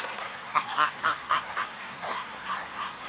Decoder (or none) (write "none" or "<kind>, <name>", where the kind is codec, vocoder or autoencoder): codec, SNAC